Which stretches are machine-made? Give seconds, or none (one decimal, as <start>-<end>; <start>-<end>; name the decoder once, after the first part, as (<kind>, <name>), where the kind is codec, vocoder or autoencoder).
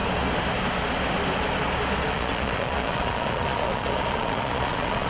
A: 2.1-5.1 (vocoder, Vocos)